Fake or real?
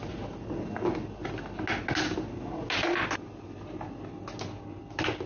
real